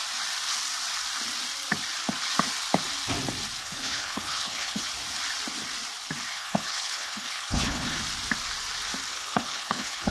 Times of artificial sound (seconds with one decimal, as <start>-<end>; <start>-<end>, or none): 3.6-4.8; 6.3-8.0; 9.1-10.1